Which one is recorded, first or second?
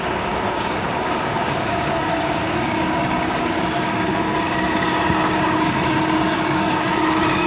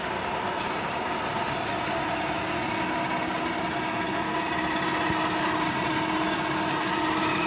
second